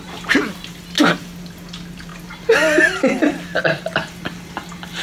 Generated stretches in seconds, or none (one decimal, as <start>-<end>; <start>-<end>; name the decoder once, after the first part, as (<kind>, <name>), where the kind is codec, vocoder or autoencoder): none